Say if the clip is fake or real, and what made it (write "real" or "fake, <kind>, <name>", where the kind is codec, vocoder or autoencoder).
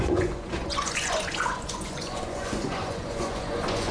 fake, vocoder, Vocos